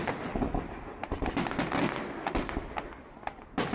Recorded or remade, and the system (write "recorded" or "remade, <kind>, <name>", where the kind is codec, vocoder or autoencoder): recorded